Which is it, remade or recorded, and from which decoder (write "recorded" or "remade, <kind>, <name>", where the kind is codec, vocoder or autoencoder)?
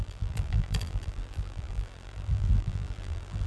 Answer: remade, vocoder, BigVGAN v2